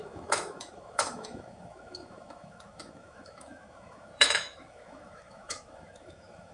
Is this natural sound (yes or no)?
no